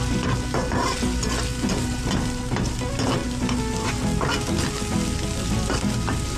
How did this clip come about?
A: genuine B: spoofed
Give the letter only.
A